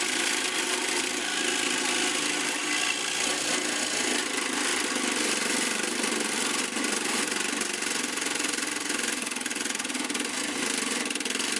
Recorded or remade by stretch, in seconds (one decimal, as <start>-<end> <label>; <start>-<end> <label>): 0.0-11.6 recorded